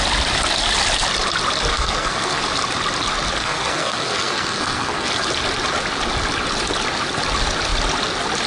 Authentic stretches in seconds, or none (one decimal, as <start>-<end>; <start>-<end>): 0.0-1.7; 2.4-3.4; 5.1-8.5